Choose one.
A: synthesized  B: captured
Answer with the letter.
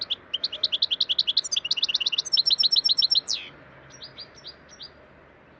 B